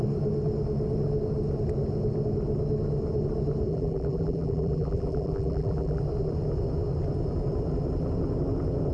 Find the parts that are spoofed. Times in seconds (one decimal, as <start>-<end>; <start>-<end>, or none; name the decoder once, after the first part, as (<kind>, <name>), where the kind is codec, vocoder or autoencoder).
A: 3.7-6.0 (vocoder, BigVGAN v2)